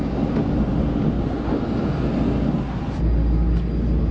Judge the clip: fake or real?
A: real